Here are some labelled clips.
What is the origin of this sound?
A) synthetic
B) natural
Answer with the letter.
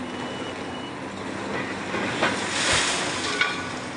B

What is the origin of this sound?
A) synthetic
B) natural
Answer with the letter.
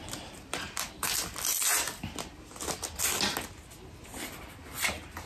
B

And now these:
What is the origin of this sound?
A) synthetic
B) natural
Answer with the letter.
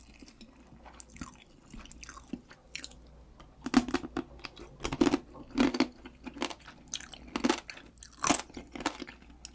B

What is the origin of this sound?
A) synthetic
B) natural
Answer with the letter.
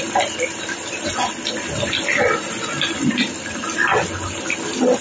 B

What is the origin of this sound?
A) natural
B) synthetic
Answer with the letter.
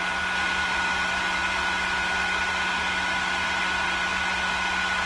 A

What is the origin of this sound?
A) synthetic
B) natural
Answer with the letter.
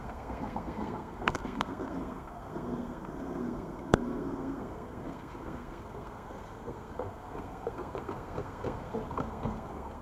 A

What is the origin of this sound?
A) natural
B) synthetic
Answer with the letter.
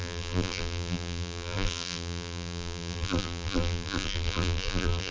B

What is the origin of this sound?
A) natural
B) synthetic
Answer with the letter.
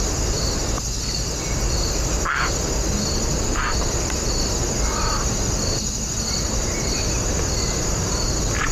A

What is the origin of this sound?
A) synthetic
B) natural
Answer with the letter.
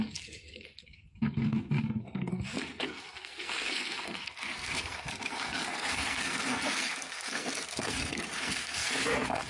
A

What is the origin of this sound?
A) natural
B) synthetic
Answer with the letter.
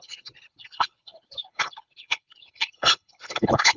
B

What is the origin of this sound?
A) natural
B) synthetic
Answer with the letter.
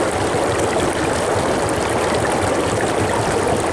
A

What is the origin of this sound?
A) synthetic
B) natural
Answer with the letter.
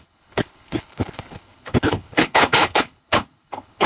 A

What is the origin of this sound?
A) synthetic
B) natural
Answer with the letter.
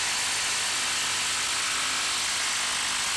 B